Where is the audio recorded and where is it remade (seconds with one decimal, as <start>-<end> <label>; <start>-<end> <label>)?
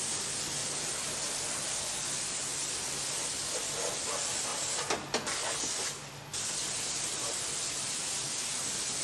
0.0-9.0 recorded